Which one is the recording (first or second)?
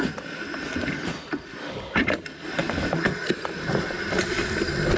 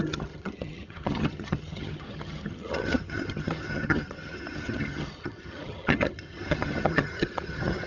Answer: first